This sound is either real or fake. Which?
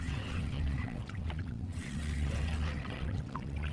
fake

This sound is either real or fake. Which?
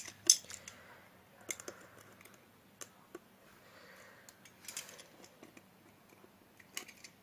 real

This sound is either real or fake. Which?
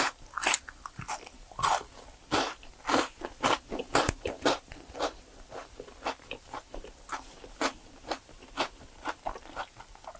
real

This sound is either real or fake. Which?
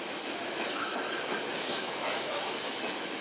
fake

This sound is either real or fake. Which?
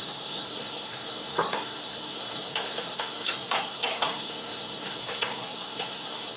fake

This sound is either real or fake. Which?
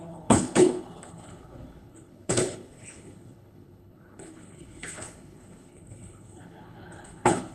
fake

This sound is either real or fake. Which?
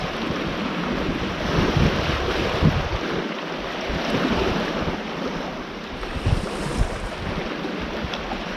real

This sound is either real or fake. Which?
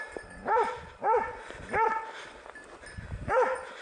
real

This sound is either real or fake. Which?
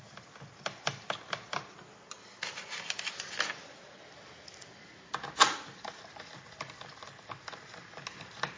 real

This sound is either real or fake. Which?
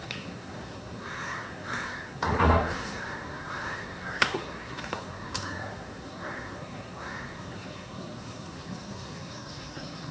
fake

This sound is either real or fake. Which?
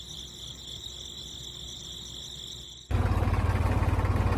real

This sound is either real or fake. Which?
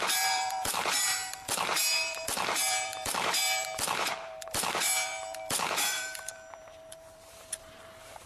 fake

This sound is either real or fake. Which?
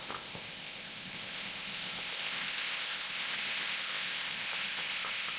fake